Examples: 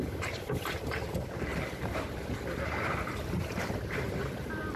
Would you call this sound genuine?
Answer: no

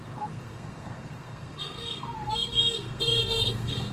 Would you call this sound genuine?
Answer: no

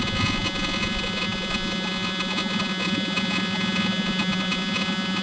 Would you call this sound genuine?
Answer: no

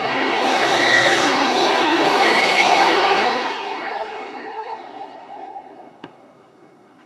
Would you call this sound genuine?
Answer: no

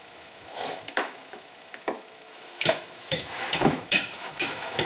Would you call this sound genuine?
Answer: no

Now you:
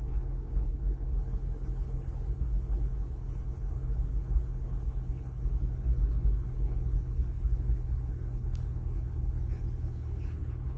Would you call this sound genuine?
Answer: no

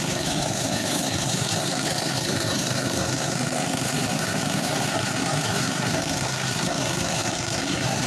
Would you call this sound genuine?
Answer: no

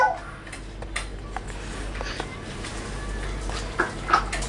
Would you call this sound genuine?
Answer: yes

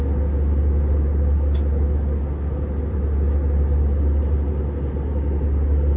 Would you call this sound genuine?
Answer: yes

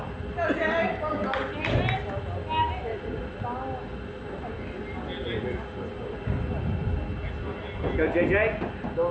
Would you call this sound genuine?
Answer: yes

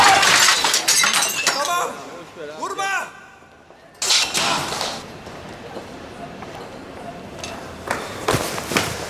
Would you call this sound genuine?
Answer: yes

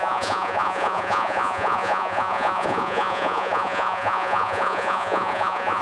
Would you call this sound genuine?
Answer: no